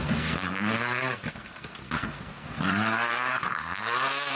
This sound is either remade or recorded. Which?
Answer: remade